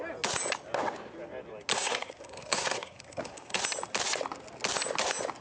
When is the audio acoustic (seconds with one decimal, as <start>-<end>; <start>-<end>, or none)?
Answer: 0.0-1.7; 3.6-5.4